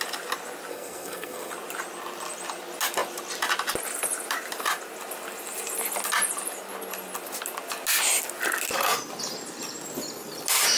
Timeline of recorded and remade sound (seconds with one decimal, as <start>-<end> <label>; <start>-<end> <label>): 0.0-0.7 recorded; 0.7-1.5 remade; 1.5-10.8 recorded

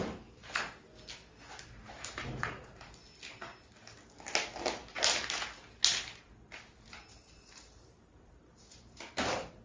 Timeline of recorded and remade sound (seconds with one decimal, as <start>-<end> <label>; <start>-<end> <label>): 0.0-0.9 remade; 0.9-1.6 recorded; 1.6-3.0 remade; 3.0-6.2 recorded; 6.2-9.6 remade

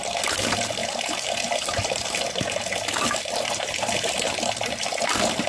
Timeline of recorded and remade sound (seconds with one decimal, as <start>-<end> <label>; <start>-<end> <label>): 0.0-5.5 recorded

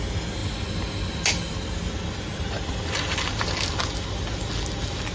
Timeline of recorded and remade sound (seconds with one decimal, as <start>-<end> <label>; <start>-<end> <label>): 0.0-5.1 recorded

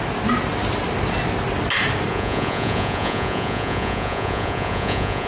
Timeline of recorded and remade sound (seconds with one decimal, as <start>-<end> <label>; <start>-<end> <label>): 0.0-2.1 recorded; 2.1-5.3 remade

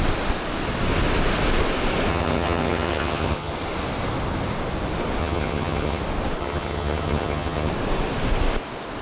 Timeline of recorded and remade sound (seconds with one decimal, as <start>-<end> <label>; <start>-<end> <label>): 0.0-2.1 recorded; 2.1-3.5 remade; 3.5-5.2 recorded; 5.2-6.0 remade; 6.0-6.4 recorded; 6.4-7.7 remade; 7.7-9.0 recorded

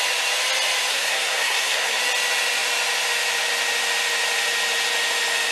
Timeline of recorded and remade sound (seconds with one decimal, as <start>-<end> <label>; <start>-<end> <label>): 0.0-0.9 recorded; 0.9-2.0 remade; 2.0-5.5 recorded

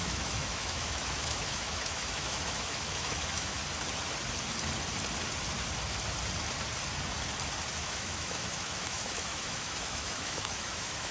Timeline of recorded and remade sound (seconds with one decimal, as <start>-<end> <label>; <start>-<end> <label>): 0.0-3.6 remade; 3.6-7.8 recorded; 7.8-11.1 remade